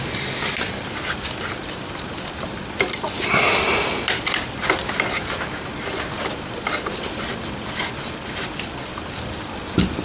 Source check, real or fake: real